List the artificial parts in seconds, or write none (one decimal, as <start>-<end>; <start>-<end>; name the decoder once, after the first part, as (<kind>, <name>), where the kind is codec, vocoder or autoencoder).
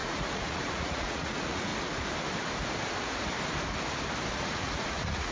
0.0-1.7 (vocoder, Vocos); 4.3-5.3